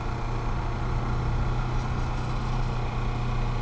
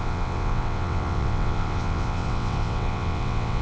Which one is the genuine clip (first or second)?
first